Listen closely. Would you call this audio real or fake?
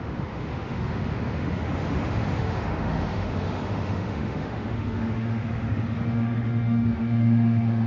fake